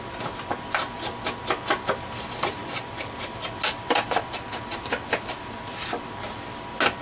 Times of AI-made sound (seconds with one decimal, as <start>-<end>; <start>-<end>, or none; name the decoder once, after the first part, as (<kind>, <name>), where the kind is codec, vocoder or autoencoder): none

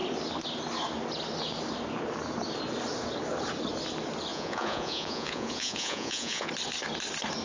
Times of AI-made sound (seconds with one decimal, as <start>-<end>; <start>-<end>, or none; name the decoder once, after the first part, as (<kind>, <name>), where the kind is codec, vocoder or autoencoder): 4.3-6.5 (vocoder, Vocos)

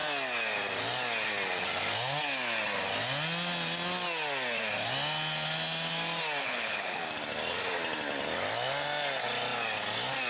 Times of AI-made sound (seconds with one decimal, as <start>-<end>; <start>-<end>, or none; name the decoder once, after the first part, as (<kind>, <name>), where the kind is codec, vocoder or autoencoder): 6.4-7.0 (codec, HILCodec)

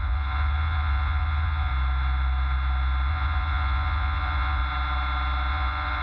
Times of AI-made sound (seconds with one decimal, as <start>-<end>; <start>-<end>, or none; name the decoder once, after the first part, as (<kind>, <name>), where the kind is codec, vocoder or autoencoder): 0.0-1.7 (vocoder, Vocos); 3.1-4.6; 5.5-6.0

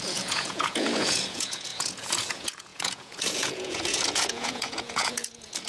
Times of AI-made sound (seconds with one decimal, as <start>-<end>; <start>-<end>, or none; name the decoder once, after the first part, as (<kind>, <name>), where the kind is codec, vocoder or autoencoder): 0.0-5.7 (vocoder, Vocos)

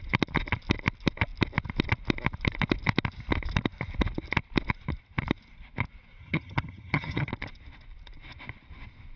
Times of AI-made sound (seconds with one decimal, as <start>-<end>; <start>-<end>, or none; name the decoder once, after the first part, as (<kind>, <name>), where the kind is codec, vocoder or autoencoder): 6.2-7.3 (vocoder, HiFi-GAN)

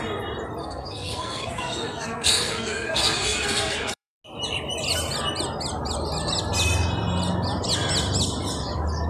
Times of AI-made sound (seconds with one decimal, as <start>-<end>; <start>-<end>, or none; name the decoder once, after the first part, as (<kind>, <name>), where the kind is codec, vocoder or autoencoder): 0.6-4.2 (codec, SNAC)

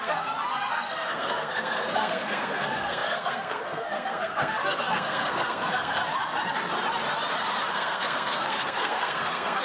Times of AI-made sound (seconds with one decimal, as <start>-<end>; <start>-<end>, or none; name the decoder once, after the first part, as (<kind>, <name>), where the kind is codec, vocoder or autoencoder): 0.0-6.0 (codec, SNAC); 7.7-9.6